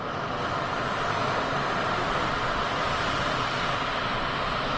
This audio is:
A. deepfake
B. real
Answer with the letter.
B